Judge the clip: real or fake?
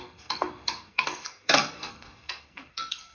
fake